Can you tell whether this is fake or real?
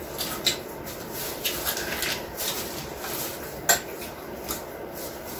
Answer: real